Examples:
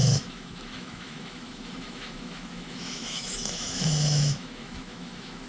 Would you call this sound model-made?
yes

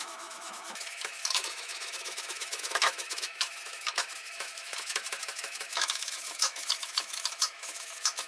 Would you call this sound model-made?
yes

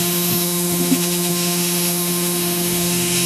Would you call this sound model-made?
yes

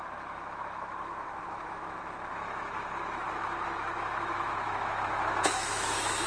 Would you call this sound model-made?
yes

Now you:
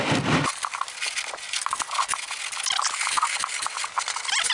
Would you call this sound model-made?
no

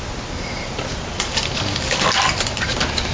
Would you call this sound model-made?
no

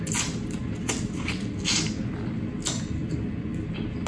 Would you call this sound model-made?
no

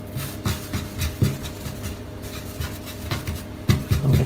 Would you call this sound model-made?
no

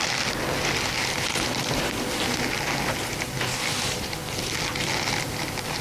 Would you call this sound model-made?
no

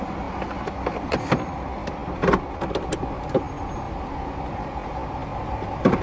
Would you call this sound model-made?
no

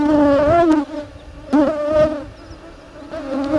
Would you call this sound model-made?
no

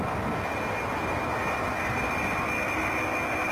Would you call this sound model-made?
no